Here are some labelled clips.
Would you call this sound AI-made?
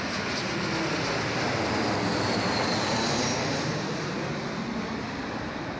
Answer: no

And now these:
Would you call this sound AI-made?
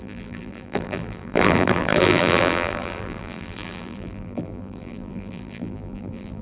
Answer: yes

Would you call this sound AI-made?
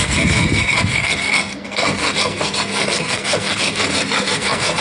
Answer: yes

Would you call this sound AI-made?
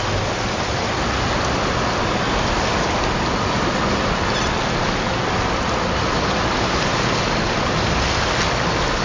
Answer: no